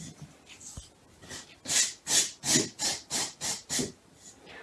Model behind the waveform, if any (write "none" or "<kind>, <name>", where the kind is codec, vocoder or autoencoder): none